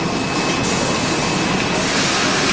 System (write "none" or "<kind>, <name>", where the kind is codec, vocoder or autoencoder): none